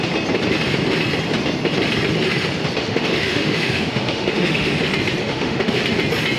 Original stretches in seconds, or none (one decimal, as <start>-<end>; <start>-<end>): 0.0-2.8; 4.8-5.2; 5.8-6.4